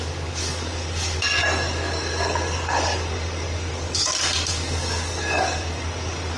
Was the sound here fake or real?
fake